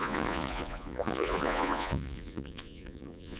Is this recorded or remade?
remade